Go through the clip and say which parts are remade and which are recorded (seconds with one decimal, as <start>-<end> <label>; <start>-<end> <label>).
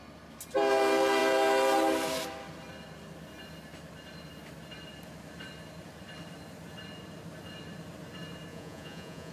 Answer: 0.0-8.5 recorded; 8.5-9.3 remade